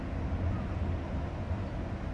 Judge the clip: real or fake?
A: real